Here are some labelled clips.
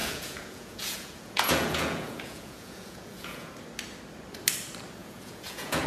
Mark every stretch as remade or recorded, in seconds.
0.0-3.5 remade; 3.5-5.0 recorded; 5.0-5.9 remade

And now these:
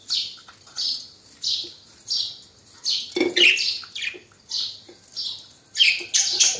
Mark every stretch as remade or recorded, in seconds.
0.0-6.6 recorded

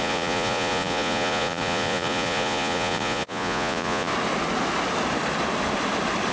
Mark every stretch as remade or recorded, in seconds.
0.0-4.1 remade; 4.1-6.3 recorded

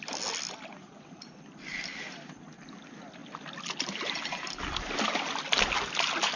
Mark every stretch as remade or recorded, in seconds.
0.0-0.7 recorded; 0.7-1.3 remade; 1.3-6.4 recorded

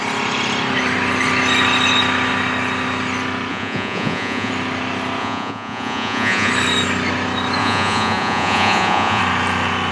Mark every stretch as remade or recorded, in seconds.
0.0-3.5 recorded; 3.5-4.5 remade; 4.5-5.2 recorded; 5.2-6.5 remade; 6.5-7.6 recorded; 7.6-9.2 remade; 9.2-9.9 recorded

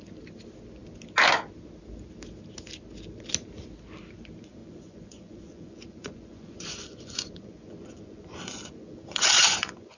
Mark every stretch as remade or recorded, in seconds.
0.0-4.6 recorded; 4.6-10.0 remade